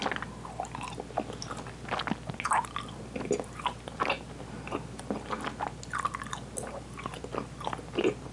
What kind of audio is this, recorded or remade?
recorded